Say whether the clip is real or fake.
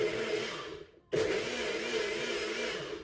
real